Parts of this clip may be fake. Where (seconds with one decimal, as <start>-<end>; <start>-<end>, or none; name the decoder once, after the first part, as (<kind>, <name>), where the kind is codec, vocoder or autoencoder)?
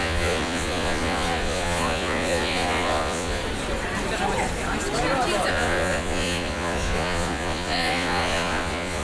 0.0-3.4 (vocoder, Vocos); 5.5-9.0